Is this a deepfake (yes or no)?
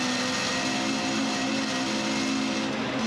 no